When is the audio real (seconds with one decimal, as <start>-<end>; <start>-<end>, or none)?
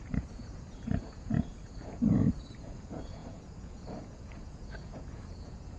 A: none